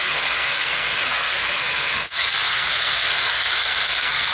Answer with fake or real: fake